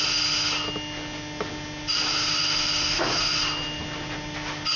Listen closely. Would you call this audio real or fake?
real